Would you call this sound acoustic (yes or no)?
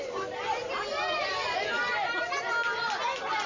yes